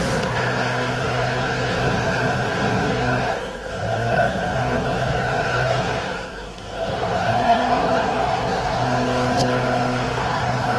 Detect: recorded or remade remade